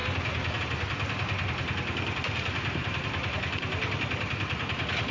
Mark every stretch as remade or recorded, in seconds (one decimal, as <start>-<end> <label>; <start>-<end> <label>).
0.0-5.1 recorded